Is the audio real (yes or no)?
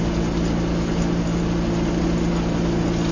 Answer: yes